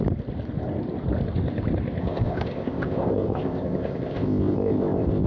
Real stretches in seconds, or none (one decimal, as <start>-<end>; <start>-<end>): 0.0-2.0